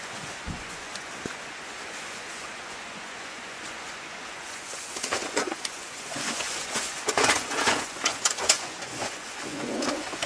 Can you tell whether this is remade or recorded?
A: remade